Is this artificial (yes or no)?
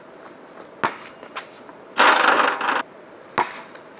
no